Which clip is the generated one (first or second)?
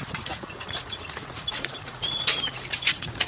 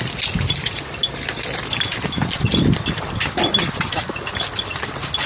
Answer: first